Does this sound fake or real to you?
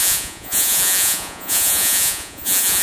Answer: fake